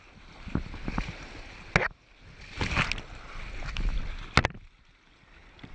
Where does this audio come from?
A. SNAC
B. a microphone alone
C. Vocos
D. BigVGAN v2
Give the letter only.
B